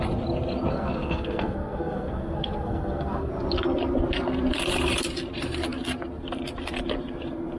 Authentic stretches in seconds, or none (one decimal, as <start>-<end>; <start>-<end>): 0.0-0.7; 3.3-7.6